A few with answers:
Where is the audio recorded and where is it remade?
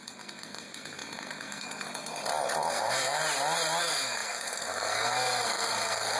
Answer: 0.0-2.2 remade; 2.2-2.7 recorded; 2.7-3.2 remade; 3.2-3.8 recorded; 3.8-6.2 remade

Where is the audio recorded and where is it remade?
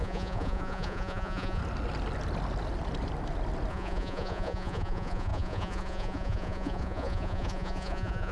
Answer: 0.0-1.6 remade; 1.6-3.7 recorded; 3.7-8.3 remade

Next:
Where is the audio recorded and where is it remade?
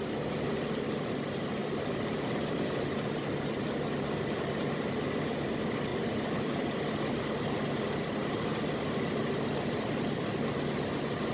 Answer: 0.0-1.6 recorded; 1.6-3.3 remade; 3.3-5.9 recorded; 5.9-6.6 remade; 6.6-11.3 recorded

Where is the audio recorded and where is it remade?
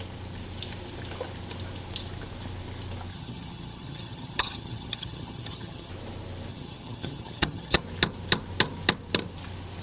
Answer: 0.0-3.1 recorded; 3.1-5.9 remade; 5.9-6.5 recorded; 6.5-7.8 remade; 7.8-9.8 recorded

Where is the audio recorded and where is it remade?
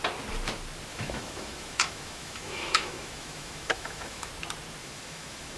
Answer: 0.0-0.9 recorded; 0.9-4.3 remade; 4.3-4.8 recorded; 4.8-5.6 remade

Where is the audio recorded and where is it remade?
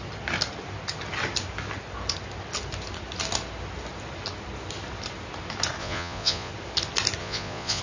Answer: 0.0-5.8 recorded; 5.8-6.5 remade; 6.5-7.2 recorded; 7.2-7.8 remade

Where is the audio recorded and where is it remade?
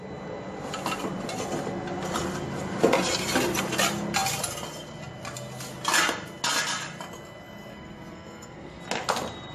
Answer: 0.0-7.7 recorded; 7.7-8.8 remade; 8.8-9.5 recorded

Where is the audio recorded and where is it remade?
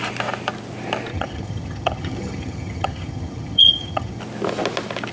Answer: 0.0-1.1 recorded; 1.1-4.2 remade; 4.2-5.1 recorded